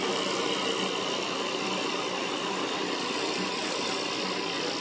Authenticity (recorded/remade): recorded